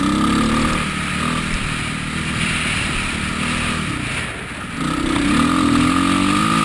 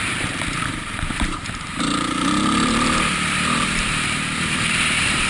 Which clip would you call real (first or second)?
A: first